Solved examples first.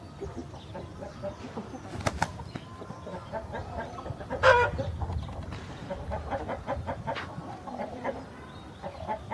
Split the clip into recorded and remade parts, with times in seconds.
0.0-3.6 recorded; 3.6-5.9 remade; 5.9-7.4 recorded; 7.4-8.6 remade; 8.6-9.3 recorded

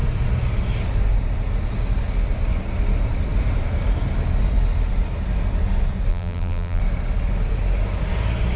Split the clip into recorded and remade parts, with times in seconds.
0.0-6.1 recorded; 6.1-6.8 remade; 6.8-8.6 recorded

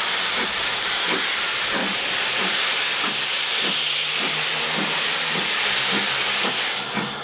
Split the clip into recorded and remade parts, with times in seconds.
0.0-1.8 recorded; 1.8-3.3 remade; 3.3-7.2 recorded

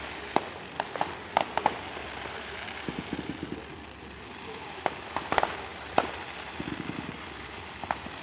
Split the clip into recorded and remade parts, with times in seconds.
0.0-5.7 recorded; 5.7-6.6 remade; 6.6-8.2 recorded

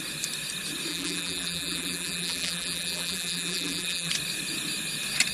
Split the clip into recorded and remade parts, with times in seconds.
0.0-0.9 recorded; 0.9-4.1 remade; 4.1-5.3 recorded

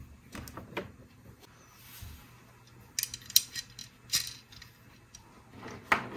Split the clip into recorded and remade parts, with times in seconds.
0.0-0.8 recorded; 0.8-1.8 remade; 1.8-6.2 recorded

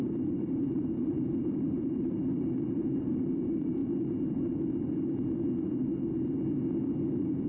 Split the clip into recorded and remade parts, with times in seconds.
0.0-3.8 remade; 3.8-7.5 recorded

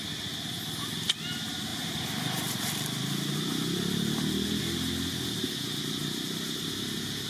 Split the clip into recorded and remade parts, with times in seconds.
0.0-1.7 recorded; 1.7-4.6 remade; 4.6-6.0 recorded; 6.0-6.7 remade; 6.7-7.3 recorded